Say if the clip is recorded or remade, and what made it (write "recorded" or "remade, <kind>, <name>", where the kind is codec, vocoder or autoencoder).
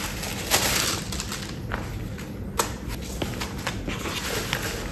recorded